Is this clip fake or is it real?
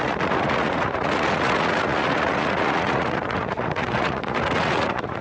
fake